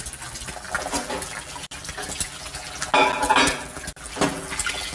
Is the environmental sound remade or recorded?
recorded